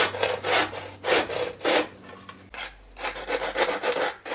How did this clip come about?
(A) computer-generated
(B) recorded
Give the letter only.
B